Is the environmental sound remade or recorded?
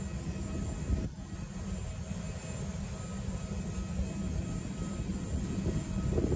recorded